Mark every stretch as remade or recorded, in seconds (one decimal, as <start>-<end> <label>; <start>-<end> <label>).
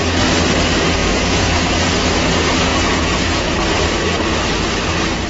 0.0-1.0 recorded; 1.0-1.6 remade; 1.6-2.7 recorded; 2.7-3.6 remade; 3.6-5.3 recorded